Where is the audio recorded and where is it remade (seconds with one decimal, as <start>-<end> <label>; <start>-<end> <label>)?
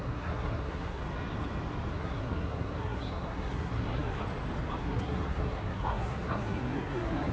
0.0-1.0 remade; 1.0-1.9 recorded; 1.9-4.2 remade; 4.2-4.8 recorded; 4.8-7.3 remade